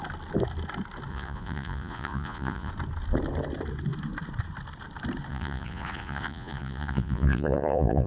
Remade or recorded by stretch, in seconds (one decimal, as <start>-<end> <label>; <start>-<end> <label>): 0.0-1.1 recorded; 1.1-2.7 remade; 2.7-5.3 recorded; 5.3-8.1 remade